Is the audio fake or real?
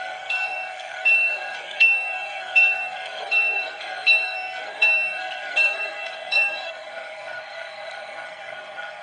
fake